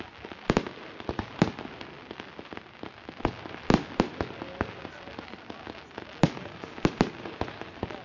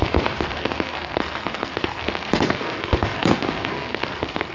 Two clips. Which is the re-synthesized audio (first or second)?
second